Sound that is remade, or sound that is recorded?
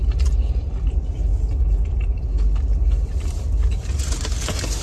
recorded